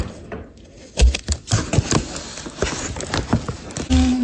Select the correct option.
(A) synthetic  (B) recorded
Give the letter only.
B